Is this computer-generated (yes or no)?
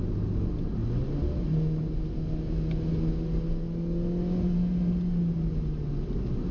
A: no